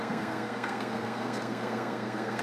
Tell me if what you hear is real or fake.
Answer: fake